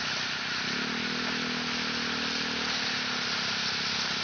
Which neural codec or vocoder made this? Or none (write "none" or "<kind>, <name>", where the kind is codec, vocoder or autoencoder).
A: none